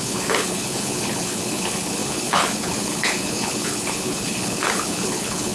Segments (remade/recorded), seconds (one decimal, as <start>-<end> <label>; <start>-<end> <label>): 0.0-5.5 remade